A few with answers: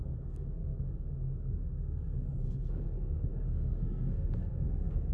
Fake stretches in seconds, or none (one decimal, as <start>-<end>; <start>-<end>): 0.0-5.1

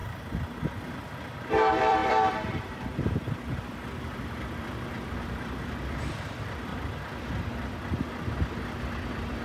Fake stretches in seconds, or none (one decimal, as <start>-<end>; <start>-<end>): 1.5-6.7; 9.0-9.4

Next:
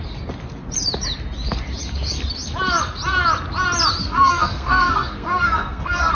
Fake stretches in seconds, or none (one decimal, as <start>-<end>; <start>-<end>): 4.0-6.1

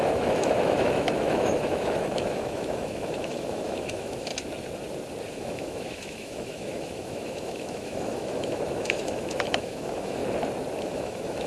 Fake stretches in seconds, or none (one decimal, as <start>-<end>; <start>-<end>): 0.0-4.3; 5.3-10.2; 10.8-11.5

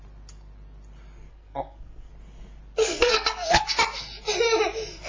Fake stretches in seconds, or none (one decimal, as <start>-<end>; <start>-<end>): 1.3-2.1; 2.8-3.6